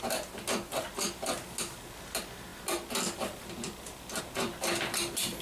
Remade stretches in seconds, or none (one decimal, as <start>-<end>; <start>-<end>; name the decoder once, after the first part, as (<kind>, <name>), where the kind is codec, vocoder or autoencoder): none